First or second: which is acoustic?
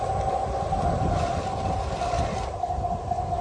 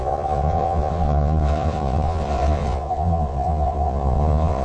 first